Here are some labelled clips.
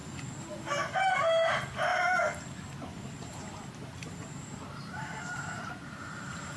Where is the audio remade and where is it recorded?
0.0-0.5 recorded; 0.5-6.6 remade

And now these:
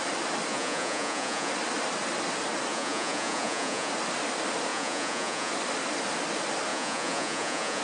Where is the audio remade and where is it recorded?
0.0-0.5 recorded; 0.5-1.5 remade; 1.5-2.7 recorded; 2.7-3.9 remade; 3.9-4.7 recorded; 4.7-5.5 remade; 5.5-6.7 recorded; 6.7-7.8 remade

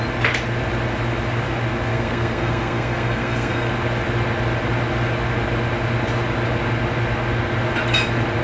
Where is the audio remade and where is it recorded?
0.0-1.9 recorded; 1.9-3.7 remade; 3.7-8.4 recorded

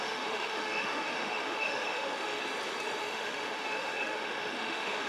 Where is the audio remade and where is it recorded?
0.0-2.4 remade; 2.4-3.0 recorded; 3.0-5.1 remade